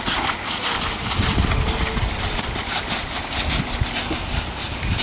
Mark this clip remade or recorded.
recorded